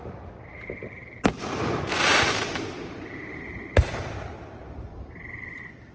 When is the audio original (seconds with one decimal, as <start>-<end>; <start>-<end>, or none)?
0.0-0.5; 4.0-5.9